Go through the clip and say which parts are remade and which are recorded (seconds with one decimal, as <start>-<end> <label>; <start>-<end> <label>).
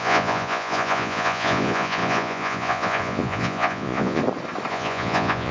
0.0-4.2 remade; 4.2-4.7 recorded; 4.7-5.5 remade